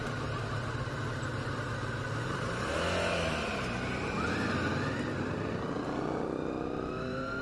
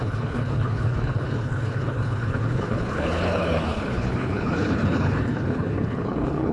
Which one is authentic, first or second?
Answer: first